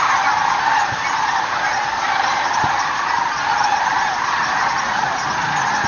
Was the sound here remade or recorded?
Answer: recorded